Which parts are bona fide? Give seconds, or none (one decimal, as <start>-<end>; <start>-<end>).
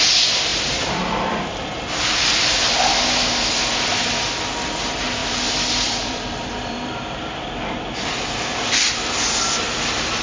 0.0-0.5; 2.7-5.2; 7.5-10.2